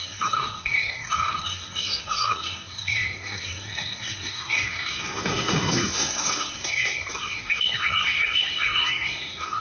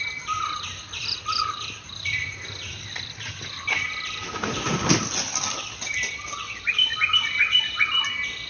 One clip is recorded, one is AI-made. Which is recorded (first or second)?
second